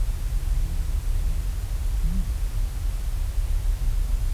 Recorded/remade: recorded